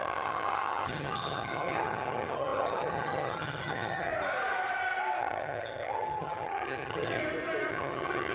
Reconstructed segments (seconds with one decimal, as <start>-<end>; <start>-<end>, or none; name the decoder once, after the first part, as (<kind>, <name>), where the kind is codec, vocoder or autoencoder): 0.0-4.1 (vocoder, HiFi-GAN); 5.2-7.2; 7.7-8.3